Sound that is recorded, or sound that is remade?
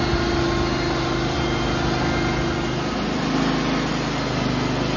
recorded